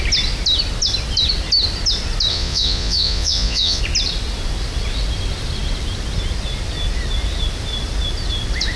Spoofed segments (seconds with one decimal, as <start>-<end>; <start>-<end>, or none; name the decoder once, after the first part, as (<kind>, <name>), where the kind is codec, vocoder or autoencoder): 2.3-3.8 (vocoder, Vocos)